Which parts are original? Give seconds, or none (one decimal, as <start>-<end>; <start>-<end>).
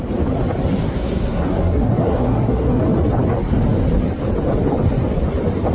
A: 0.0-0.8; 2.8-5.7